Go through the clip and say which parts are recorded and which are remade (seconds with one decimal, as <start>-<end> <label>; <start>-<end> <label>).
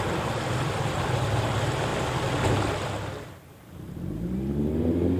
0.0-5.2 recorded